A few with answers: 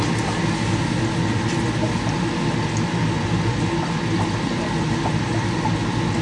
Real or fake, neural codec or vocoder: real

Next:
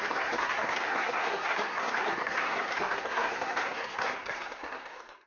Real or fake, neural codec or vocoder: fake, codec, SNAC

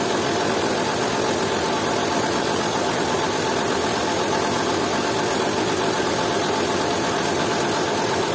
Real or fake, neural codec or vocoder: real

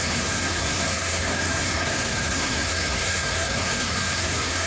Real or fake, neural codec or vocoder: fake, codec, SNAC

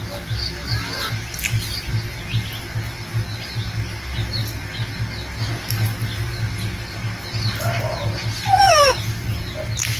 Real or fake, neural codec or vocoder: real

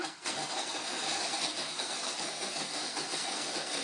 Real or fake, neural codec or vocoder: fake, codec, SNAC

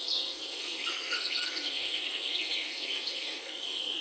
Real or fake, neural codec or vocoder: fake, codec, SNAC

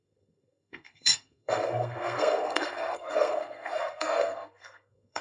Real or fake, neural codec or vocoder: fake, codec, SNAC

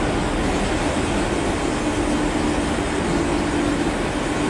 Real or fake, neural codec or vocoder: real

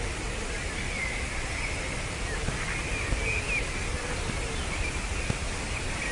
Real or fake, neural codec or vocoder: real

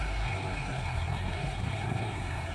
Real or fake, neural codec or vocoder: fake, codec, SNAC